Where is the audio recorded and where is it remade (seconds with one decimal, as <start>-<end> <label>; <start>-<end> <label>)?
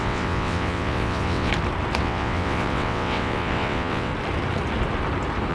0.0-1.5 remade; 1.5-2.0 recorded; 2.0-4.1 remade; 4.1-5.5 recorded